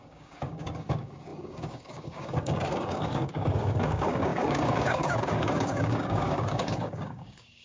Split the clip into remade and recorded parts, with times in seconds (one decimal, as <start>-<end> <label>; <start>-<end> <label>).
0.0-7.6 remade